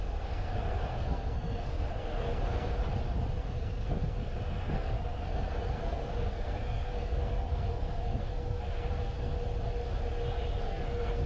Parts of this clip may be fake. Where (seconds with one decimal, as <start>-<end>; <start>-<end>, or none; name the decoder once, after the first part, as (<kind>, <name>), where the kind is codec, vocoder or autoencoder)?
0.0-2.8 (codec, SNAC); 3.4-9.3; 10.6-11.3